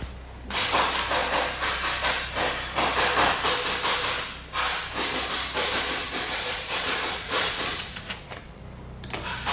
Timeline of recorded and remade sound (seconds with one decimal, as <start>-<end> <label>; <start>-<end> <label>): 0.0-6.0 recorded; 6.0-8.6 remade; 8.6-9.5 recorded